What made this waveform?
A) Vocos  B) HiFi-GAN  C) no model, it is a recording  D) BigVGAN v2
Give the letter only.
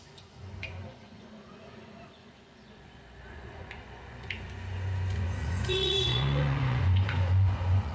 A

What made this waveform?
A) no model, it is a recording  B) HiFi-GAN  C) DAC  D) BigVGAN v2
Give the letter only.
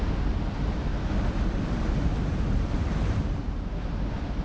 D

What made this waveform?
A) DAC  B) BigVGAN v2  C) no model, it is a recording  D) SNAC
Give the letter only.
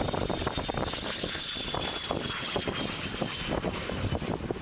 C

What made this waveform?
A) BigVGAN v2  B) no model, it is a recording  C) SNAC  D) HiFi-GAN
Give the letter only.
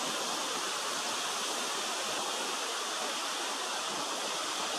B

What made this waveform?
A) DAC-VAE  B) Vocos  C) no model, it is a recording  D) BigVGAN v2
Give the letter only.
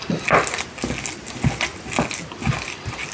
C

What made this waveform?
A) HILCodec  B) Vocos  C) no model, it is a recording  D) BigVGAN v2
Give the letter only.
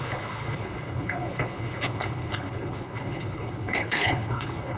A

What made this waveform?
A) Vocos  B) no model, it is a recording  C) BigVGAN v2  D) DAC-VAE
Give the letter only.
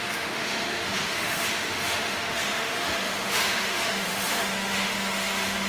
D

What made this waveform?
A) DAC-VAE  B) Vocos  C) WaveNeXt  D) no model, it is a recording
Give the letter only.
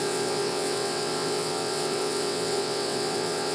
C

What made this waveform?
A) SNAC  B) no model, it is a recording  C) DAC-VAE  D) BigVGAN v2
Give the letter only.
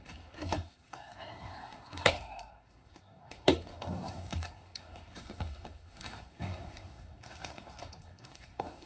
A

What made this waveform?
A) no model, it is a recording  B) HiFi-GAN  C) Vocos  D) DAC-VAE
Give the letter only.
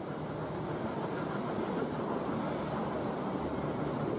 A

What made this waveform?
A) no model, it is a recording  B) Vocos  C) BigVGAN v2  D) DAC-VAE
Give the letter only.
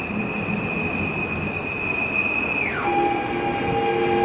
A